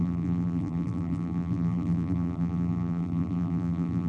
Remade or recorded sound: remade